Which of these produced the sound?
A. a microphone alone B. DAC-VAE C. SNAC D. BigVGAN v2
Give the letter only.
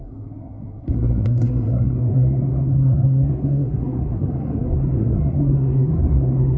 C